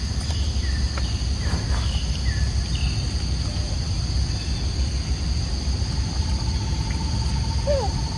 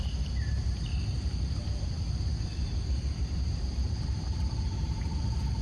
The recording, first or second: first